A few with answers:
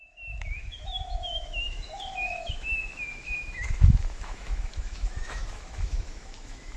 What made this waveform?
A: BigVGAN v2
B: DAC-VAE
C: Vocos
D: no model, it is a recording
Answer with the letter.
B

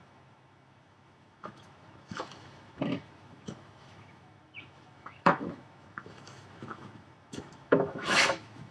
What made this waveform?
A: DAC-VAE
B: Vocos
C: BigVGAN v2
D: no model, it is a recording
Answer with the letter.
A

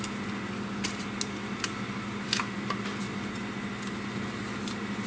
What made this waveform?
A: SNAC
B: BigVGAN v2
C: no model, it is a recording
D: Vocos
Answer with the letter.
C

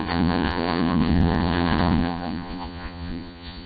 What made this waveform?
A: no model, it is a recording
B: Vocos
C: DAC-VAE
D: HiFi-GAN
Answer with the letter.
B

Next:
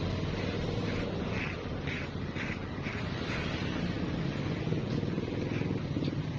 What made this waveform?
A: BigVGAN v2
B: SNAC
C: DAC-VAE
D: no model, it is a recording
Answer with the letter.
D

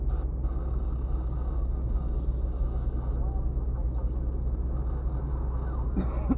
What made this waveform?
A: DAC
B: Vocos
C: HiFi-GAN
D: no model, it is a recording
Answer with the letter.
D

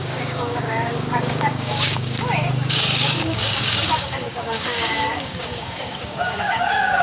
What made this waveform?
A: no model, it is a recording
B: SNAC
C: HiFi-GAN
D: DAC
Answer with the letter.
D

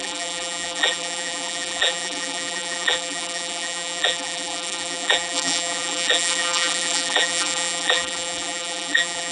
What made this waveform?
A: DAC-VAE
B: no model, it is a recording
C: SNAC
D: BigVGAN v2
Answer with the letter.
D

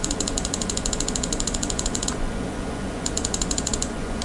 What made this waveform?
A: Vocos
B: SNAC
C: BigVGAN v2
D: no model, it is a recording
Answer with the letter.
A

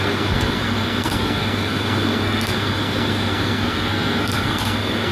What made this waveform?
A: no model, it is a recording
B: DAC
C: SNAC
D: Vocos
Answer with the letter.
C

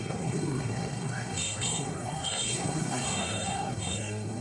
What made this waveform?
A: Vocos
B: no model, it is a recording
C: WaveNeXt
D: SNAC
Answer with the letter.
D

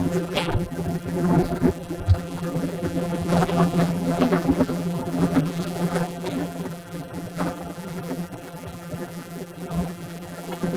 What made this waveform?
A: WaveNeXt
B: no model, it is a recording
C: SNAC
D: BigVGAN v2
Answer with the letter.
D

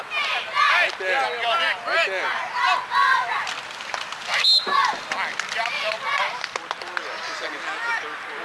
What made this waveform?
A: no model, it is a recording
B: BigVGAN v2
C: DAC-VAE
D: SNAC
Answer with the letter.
A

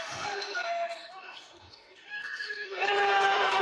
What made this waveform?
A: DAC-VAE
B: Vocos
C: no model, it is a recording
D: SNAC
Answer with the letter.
A